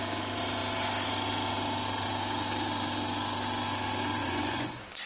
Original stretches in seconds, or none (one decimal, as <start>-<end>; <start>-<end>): 0.0-4.2